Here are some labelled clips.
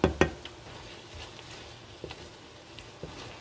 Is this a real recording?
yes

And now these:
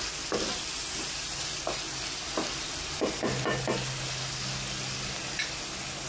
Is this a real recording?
yes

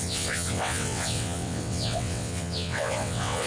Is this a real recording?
no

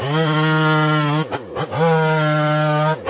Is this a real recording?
yes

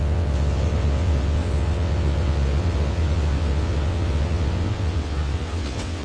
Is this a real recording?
no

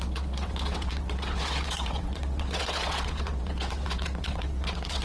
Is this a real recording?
no